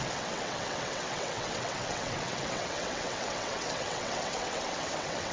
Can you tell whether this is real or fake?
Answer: fake